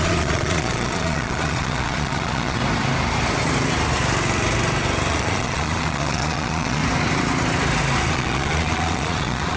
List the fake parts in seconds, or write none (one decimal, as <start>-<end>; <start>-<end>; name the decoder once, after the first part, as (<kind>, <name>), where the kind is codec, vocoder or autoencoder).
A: 0.0-2.6 (vocoder, Vocos); 5.1-6.8; 8.1-9.6